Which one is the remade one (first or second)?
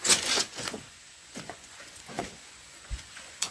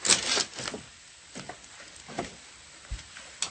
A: first